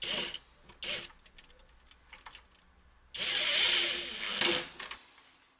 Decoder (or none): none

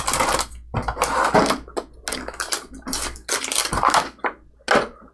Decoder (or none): none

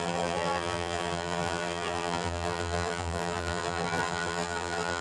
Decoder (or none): vocoder, BigVGAN v2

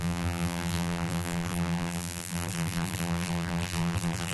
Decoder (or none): vocoder, BigVGAN v2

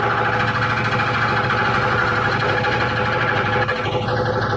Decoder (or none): none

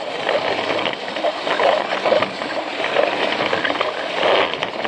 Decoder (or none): none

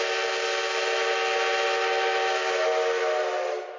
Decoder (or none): none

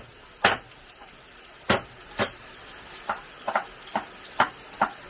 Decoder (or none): none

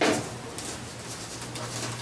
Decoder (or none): none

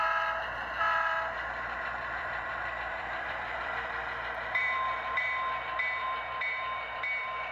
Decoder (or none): vocoder, BigVGAN v2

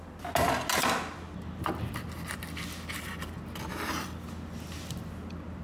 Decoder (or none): none